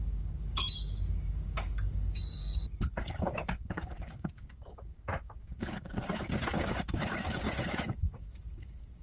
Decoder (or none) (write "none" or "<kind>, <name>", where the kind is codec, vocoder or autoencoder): codec, DAC